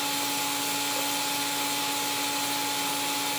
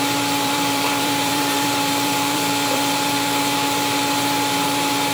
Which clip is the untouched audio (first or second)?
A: first